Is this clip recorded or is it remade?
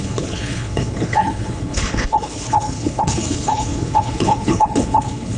remade